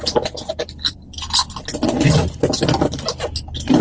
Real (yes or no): yes